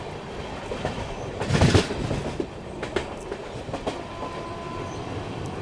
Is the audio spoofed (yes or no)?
no